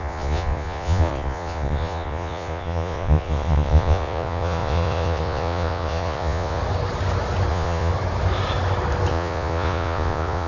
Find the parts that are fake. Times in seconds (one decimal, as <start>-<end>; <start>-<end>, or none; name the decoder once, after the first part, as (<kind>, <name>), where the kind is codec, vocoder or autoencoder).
0.0-6.6 (vocoder, Vocos); 7.5-7.9; 9.1-10.5